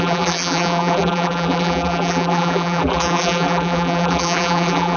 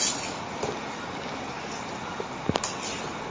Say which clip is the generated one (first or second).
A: first